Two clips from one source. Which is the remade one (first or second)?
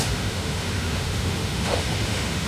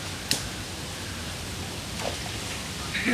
first